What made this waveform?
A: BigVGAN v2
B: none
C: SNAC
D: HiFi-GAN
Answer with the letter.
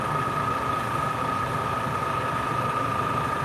B